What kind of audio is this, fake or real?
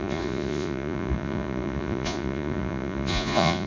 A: fake